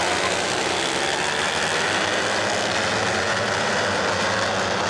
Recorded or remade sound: recorded